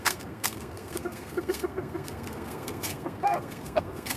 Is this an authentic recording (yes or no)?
no